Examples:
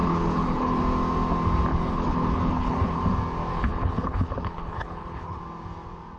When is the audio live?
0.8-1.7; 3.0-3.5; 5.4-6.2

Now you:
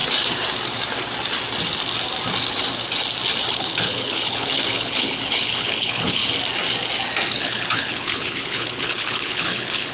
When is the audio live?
0.0-3.5; 6.2-7.3

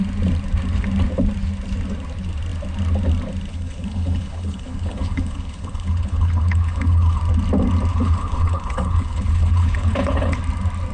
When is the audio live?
0.0-3.5; 7.2-7.9; 10.4-10.9

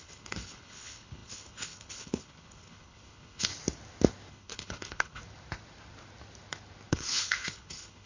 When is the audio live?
3.5-4.3; 5.2-6.9

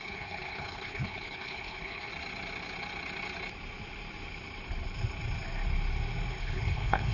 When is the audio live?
2.1-6.4

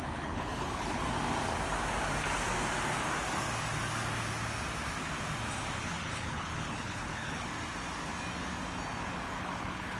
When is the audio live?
1.0-5.8; 7.5-9.4

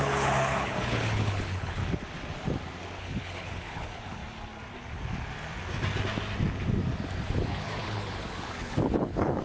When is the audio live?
1.8-3.0; 4.2-7.2